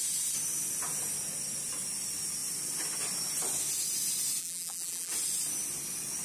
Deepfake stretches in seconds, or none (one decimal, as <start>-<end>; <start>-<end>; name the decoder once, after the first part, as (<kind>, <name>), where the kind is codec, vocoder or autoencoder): 4.4-5.1 (vocoder, BigVGAN v2)